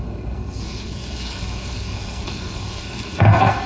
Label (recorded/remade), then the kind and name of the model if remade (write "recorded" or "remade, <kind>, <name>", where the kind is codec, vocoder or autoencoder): remade, codec, SNAC